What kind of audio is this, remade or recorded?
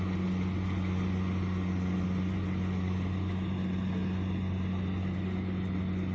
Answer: recorded